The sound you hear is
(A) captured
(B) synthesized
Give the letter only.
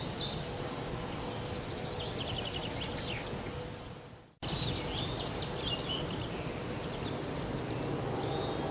A